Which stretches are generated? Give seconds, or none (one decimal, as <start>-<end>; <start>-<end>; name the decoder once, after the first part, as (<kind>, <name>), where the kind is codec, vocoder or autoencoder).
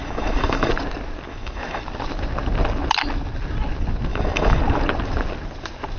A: 0.0-0.7 (autoencoder, DAC-VAE); 1.3-1.8; 4.1-4.6